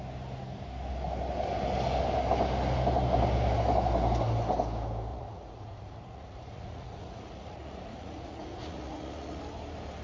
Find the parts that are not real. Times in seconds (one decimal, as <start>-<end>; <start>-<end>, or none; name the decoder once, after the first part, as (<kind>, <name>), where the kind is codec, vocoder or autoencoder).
5.1-9.4 (vocoder, Vocos)